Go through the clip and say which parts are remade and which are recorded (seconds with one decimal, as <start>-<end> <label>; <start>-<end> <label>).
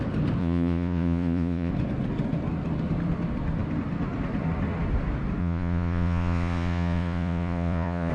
0.0-0.4 recorded; 0.4-1.7 remade; 1.7-5.4 recorded; 5.4-8.1 remade